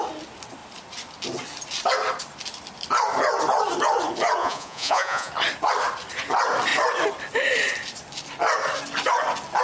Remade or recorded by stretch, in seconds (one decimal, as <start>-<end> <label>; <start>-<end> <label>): 0.0-4.4 recorded; 4.4-5.3 remade; 5.3-9.6 recorded